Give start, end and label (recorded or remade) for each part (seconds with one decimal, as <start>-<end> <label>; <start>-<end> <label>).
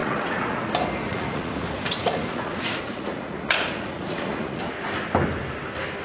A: 0.0-0.6 remade; 0.6-1.0 recorded; 1.0-4.6 remade; 4.6-6.0 recorded